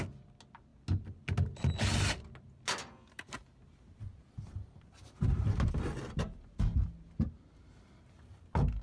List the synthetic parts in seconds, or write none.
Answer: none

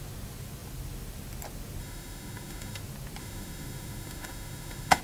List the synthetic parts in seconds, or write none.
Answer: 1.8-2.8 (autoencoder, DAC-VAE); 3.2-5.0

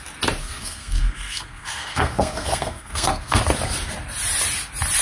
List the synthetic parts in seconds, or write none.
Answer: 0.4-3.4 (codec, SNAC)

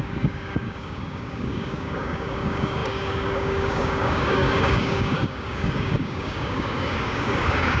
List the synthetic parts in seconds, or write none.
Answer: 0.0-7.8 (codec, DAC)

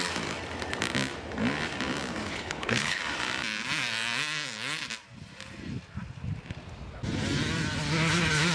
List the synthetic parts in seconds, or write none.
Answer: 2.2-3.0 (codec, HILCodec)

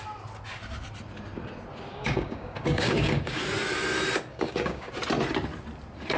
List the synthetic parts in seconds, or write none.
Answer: 1.9-3.4 (codec, DAC); 4.3-4.9

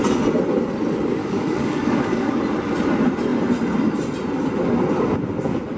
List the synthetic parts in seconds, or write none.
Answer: 1.2-2.3 (codec, DAC)